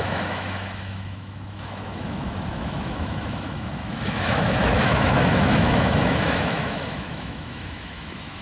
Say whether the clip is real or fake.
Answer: fake